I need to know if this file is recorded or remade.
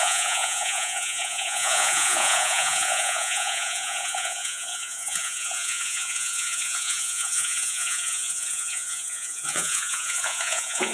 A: remade